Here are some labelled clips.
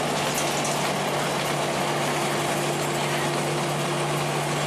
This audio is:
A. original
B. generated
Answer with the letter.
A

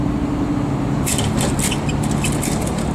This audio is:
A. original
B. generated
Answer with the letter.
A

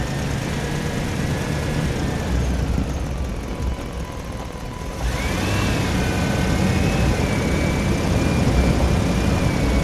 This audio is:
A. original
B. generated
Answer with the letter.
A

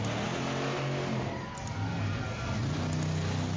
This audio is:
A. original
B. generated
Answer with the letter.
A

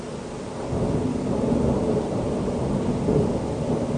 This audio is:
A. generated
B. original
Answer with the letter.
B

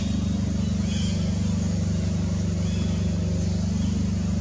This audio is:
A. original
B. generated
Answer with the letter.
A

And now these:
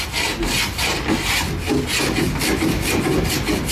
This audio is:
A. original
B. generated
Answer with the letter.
A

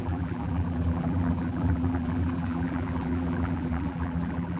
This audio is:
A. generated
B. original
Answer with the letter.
A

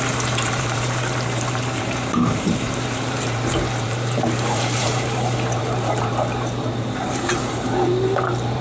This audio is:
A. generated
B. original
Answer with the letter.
A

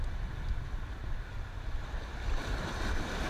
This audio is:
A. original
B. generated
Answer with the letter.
A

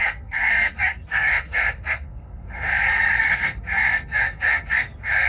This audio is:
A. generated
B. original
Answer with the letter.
A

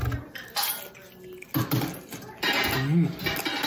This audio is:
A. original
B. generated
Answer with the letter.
A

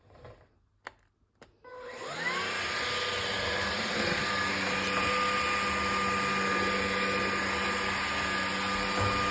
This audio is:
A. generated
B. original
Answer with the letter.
B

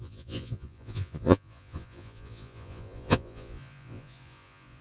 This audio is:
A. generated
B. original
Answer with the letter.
A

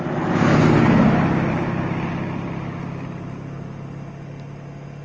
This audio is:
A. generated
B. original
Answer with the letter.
B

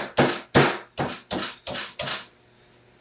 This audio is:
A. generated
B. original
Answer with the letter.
B